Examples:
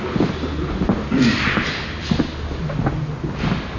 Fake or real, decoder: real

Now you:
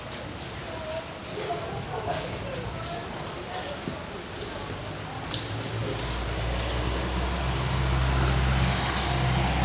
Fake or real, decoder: real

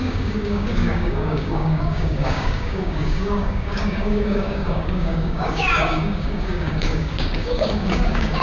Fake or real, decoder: fake, codec, DAC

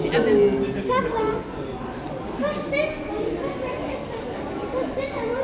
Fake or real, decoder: real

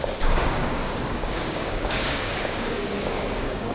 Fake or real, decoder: fake, codec, DAC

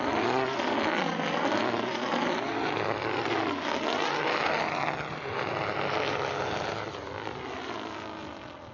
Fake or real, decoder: real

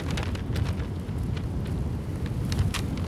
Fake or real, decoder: real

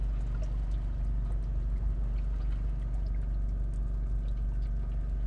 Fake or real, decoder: real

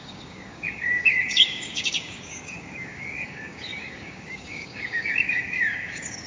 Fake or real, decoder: fake, codec, DAC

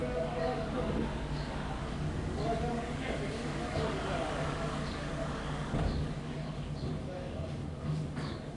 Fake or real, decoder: fake, codec, DAC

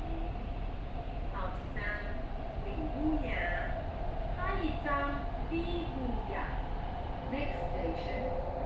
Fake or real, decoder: real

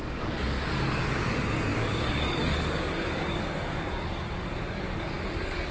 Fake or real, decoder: fake, codec, DAC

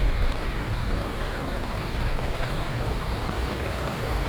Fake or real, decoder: fake, codec, DAC